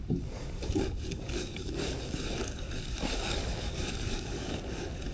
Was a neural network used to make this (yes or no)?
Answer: yes